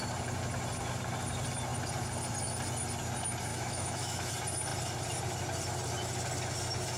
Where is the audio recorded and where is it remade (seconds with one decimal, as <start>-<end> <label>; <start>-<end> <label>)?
0.0-3.5 recorded; 3.5-4.3 remade; 4.3-7.0 recorded